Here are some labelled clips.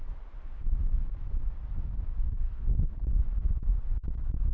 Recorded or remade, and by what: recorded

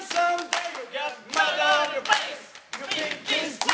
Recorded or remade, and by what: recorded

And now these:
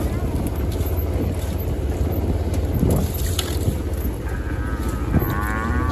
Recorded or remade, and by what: recorded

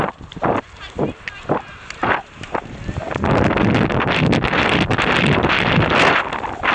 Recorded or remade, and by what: recorded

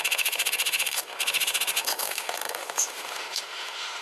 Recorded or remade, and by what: remade, autoencoder, DAC-VAE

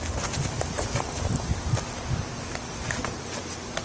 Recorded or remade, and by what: recorded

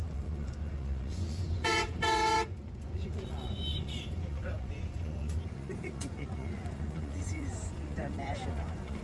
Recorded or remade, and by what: remade, vocoder, Vocos